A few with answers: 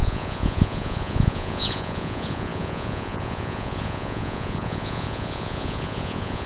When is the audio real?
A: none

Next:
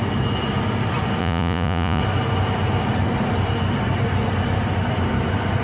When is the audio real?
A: 0.0-1.2; 2.0-5.6

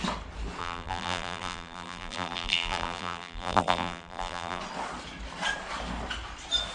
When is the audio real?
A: 0.0-0.6; 4.6-6.7

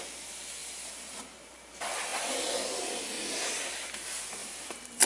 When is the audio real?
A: 0.0-0.6; 1.7-4.4